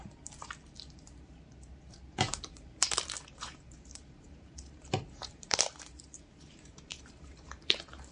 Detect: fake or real fake